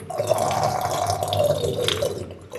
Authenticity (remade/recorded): recorded